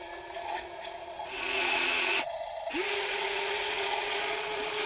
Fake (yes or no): yes